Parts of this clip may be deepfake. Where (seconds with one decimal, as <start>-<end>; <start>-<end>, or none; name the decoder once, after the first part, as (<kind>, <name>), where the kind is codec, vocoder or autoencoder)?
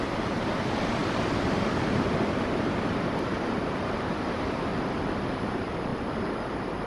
0.0-4.7 (vocoder, BigVGAN v2); 5.3-5.9; 6.5-6.9